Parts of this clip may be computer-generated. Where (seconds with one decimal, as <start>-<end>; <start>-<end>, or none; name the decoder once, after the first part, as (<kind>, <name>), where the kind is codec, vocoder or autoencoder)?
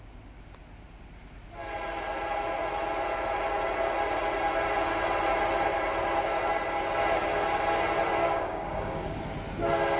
8.2-9.2 (codec, DAC)